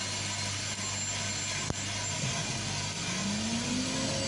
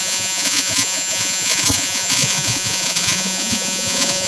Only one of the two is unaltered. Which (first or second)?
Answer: first